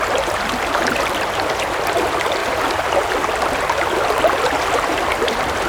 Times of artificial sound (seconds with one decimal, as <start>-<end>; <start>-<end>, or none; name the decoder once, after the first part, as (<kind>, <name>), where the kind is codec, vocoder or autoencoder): 2.4-3.3 (vocoder, BigVGAN v2)